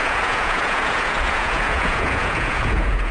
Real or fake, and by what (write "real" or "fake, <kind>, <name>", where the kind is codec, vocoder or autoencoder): fake, vocoder, Vocos